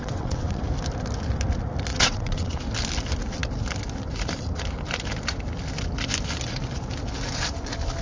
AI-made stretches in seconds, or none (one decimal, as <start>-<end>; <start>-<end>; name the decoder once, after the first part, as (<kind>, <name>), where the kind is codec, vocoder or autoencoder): 0.0-0.6 (vocoder, WaveNeXt); 1.9-2.6